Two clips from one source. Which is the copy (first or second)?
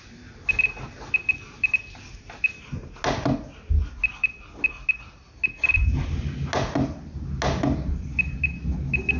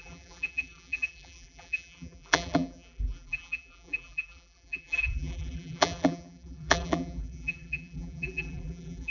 second